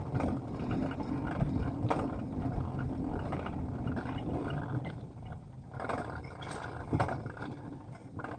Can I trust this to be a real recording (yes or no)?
yes